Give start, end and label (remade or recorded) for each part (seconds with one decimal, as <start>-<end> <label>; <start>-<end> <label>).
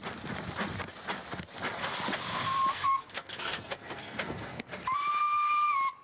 0.0-2.7 recorded; 2.7-4.7 remade; 4.7-6.0 recorded